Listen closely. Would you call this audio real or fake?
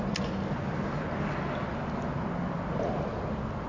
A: real